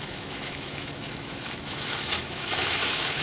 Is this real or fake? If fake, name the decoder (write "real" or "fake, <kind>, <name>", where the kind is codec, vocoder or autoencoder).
fake, autoencoder, DAC-VAE